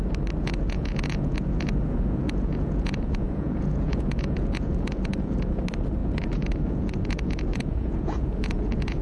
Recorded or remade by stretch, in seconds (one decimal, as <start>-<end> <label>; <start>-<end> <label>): 0.0-0.4 recorded; 0.4-5.6 remade; 5.6-6.0 recorded; 6.0-9.0 remade